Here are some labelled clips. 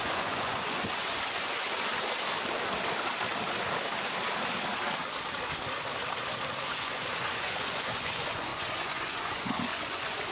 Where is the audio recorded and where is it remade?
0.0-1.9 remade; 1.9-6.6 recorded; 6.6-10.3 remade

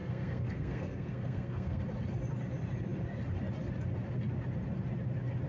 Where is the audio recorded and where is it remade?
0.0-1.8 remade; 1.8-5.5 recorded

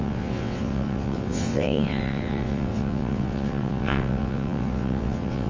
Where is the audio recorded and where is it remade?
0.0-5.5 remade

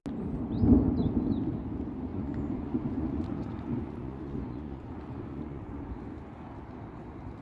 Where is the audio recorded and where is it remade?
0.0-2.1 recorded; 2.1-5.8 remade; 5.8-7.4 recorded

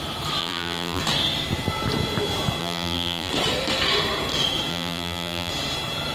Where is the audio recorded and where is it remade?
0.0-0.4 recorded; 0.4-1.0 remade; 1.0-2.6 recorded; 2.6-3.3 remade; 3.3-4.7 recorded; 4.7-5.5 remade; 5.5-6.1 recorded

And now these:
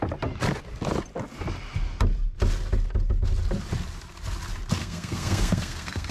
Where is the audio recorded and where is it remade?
0.0-4.8 recorded; 4.8-6.1 remade